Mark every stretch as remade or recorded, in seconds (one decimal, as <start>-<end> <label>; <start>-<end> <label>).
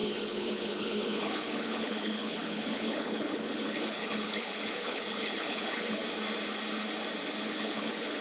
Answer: 0.0-6.0 remade; 6.0-7.4 recorded; 7.4-8.2 remade